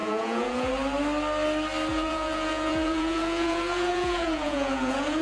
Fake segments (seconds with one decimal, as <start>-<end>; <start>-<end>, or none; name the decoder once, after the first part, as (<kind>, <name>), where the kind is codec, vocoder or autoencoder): 0.0-0.7 (vocoder, Vocos); 1.9-5.2